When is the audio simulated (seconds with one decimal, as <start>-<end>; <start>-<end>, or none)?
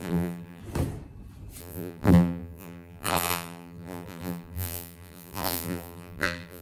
0.0-0.6; 1.6-6.6